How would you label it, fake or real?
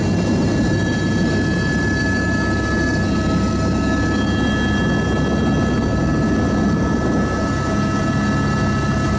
real